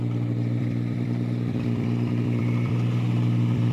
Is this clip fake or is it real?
fake